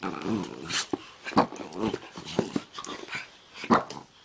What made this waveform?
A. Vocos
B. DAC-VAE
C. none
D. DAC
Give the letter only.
C